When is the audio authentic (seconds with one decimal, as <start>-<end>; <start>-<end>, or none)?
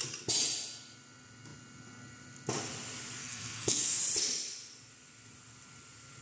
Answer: 0.0-3.2; 4.0-6.2